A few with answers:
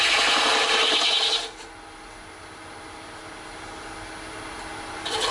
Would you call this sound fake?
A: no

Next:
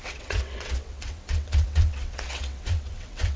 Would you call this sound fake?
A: yes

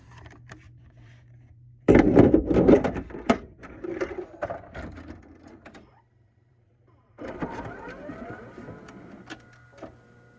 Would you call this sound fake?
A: yes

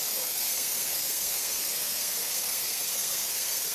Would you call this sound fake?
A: yes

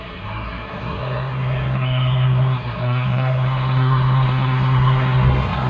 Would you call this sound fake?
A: yes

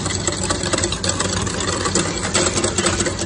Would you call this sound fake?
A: no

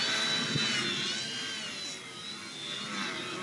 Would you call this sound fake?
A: no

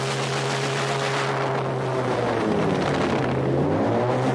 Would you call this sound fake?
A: no